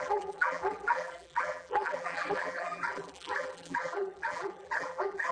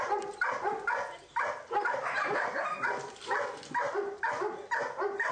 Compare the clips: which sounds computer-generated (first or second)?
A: first